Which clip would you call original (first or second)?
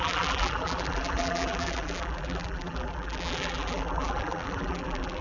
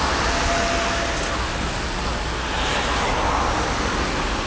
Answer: second